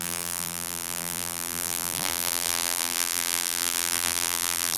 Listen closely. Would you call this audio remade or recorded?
remade